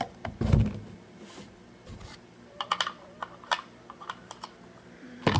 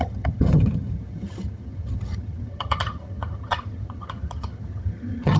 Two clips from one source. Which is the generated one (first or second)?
second